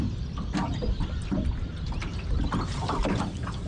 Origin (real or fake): real